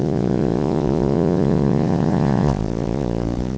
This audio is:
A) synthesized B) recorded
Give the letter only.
A